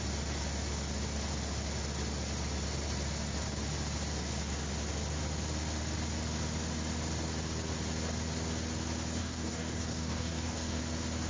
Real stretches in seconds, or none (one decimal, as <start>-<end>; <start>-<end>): 0.0-9.2; 10.8-11.3